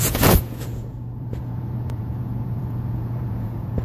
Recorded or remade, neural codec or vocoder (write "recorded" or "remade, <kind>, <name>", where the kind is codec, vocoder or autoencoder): remade, vocoder, Vocos